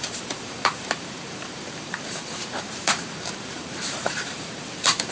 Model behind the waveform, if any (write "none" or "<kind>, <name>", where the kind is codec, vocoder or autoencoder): vocoder, BigVGAN v2